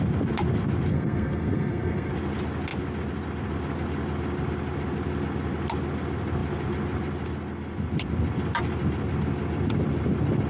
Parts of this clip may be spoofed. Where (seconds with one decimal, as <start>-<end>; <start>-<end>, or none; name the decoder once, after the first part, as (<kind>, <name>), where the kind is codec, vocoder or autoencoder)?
0.9-2.1 (codec, SNAC)